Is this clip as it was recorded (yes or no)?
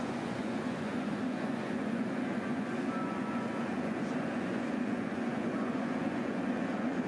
no